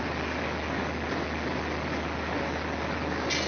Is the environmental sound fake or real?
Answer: real